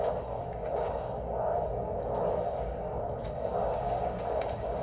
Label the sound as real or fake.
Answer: fake